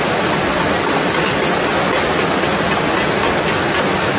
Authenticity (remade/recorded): recorded